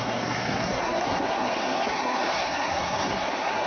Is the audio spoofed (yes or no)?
yes